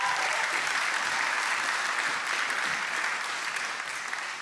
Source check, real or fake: real